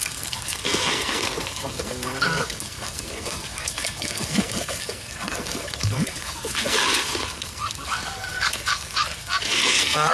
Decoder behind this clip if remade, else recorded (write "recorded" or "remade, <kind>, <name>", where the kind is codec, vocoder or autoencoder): remade, codec, SNAC